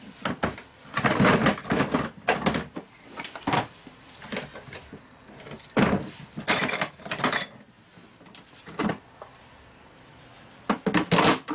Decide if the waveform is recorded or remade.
recorded